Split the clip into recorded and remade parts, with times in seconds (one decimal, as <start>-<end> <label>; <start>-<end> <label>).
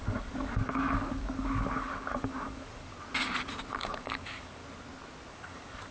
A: 0.0-2.9 remade; 2.9-3.7 recorded; 3.7-4.6 remade; 4.6-5.3 recorded; 5.3-5.9 remade